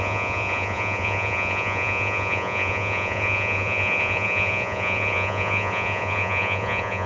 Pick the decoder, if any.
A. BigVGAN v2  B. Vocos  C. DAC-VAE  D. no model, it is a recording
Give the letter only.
B